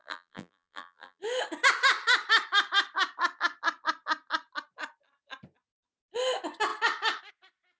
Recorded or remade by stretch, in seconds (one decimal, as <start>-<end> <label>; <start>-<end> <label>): 0.0-1.2 remade; 1.2-7.8 recorded